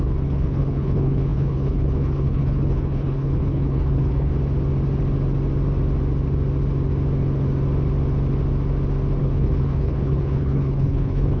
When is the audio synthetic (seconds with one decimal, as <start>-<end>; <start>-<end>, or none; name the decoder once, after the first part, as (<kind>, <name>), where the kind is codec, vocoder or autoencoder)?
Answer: 0.0-4.3 (codec, HILCodec); 9.2-11.4